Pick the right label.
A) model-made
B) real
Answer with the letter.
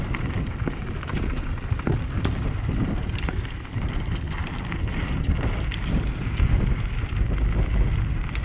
B